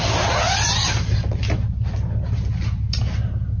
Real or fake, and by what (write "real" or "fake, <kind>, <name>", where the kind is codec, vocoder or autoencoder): real